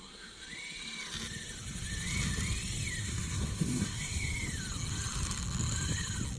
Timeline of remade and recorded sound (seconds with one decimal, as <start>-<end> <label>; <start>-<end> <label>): 0.0-0.4 remade; 0.4-3.0 recorded; 3.0-4.3 remade; 4.3-6.4 recorded